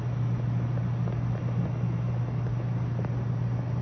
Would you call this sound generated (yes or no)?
no